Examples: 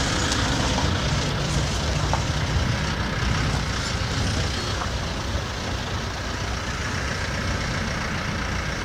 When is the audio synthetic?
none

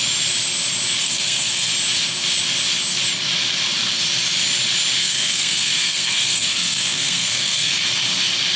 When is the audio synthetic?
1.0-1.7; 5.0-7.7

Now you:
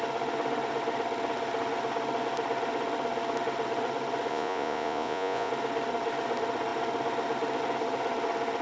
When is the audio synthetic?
4.3-5.5

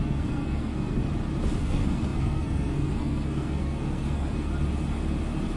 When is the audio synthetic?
0.0-1.0; 1.6-4.5